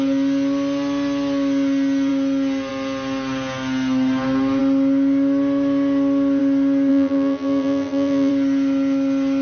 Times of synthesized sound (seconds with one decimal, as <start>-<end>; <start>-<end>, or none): 6.9-8.3